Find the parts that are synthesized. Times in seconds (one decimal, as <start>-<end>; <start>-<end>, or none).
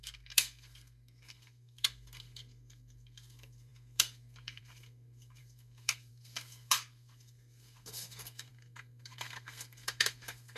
0.0-10.6